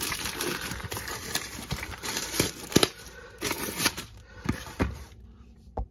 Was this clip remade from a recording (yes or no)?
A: yes